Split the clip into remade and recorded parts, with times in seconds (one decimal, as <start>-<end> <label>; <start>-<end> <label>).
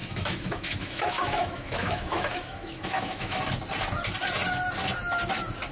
0.0-3.4 remade; 3.4-5.7 recorded